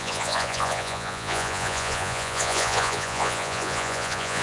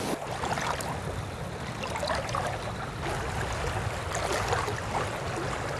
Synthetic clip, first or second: first